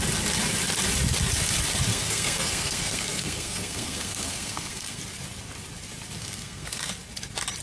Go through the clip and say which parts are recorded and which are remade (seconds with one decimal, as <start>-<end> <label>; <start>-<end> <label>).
0.0-1.9 recorded; 1.9-5.0 remade; 5.0-6.2 recorded; 6.2-6.9 remade; 6.9-7.6 recorded